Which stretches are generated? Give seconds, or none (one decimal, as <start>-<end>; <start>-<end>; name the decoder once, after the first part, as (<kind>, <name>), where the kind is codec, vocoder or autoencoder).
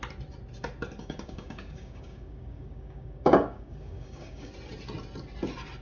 1.0-4.5 (codec, DAC)